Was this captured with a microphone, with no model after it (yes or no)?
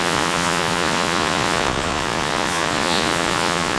no